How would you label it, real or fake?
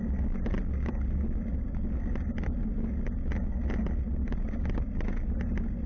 real